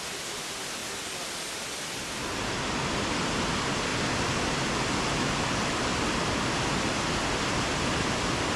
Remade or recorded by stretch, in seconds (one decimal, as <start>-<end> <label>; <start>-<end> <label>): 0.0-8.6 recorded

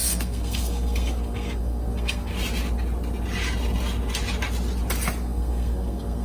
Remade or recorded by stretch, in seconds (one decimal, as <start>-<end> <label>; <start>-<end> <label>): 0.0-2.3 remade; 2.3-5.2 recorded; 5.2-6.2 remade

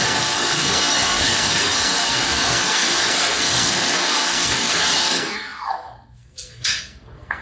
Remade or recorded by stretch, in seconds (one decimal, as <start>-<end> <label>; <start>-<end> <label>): 0.0-7.4 remade